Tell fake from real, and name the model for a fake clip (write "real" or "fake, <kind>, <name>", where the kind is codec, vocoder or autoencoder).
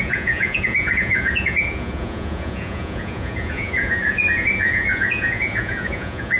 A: fake, vocoder, Vocos